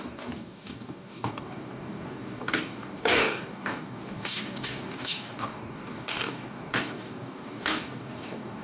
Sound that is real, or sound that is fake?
fake